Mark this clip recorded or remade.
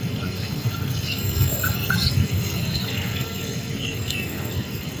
remade